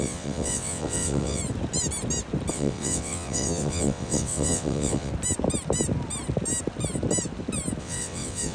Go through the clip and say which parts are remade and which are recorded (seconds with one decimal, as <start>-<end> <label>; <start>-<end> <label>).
0.0-1.4 remade; 1.4-2.5 recorded; 2.5-5.1 remade; 5.1-7.8 recorded; 7.8-8.5 remade

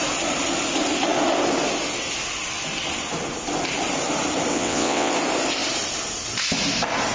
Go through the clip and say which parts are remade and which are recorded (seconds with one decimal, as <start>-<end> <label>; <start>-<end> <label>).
0.0-4.5 recorded; 4.5-5.1 remade; 5.1-7.1 recorded